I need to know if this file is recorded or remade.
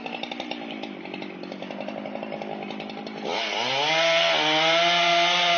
recorded